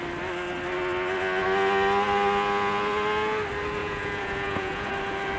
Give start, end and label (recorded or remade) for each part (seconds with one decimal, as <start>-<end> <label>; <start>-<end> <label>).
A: 0.0-3.8 recorded; 3.8-4.9 remade; 4.9-5.4 recorded